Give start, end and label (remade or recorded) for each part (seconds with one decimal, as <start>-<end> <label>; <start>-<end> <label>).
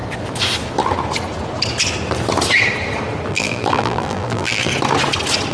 0.0-3.3 recorded; 3.3-4.7 remade; 4.7-5.5 recorded